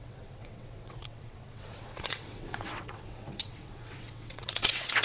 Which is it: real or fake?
fake